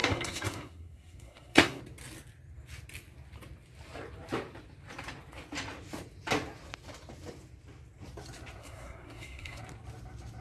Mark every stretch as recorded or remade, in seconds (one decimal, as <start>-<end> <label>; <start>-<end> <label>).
0.0-1.8 remade; 1.8-8.6 recorded; 8.6-9.6 remade; 9.6-10.4 recorded